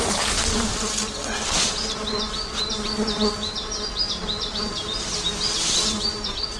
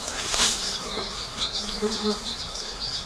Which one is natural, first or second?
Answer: first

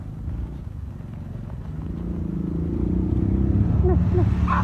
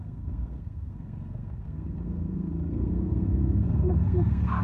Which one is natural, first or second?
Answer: first